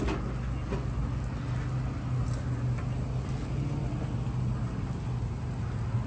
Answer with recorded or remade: recorded